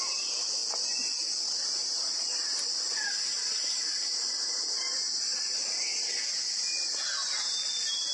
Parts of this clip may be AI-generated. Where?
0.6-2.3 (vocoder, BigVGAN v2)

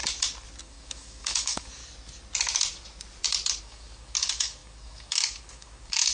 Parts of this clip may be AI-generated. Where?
0.6-1.8 (codec, DAC); 3.6-6.1

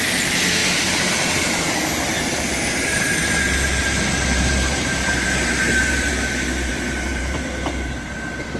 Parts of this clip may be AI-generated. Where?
2.1-6.1 (vocoder, BigVGAN v2); 6.7-8.6

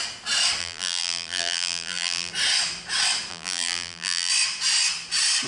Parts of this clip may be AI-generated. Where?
0.6-2.3 (vocoder, BigVGAN v2); 3.3-4.3

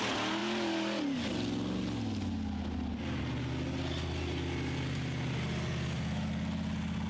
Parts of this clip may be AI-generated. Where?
none

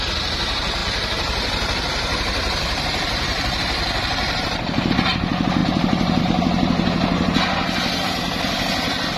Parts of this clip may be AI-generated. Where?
0.8-4.9 (vocoder, BigVGAN v2); 5.6-6.2